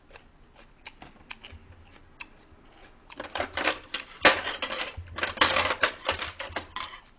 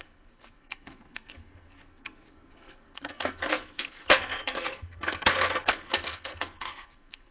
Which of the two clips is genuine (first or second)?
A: first